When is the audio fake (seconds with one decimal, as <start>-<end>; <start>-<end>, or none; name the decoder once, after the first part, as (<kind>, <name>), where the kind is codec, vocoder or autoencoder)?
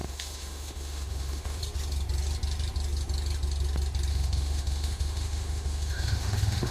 0.0-1.6 (autoencoder, DAC-VAE); 4.1-6.7